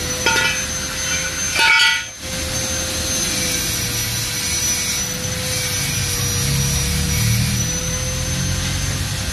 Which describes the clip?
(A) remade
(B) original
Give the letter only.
B